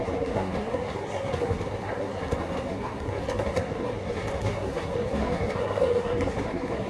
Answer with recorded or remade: remade